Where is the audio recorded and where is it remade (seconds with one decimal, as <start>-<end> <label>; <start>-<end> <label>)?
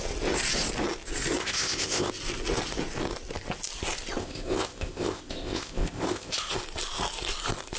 0.0-1.4 recorded; 1.4-2.1 remade; 2.1-4.2 recorded; 4.2-6.5 remade; 6.5-7.8 recorded